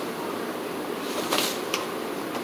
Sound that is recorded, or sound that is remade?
recorded